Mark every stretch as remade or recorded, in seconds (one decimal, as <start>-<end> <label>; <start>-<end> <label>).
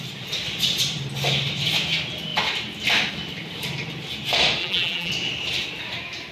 0.0-4.6 recorded; 4.6-5.1 remade; 5.1-6.3 recorded